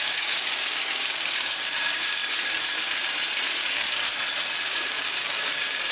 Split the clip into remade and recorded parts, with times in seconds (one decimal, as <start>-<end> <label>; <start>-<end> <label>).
0.0-2.2 remade; 2.2-3.5 recorded; 3.5-4.0 remade; 4.0-4.6 recorded; 4.6-5.9 remade